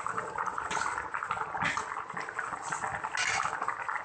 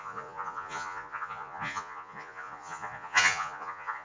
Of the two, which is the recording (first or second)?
first